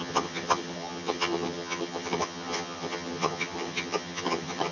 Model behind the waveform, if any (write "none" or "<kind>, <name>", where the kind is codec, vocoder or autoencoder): vocoder, HiFi-GAN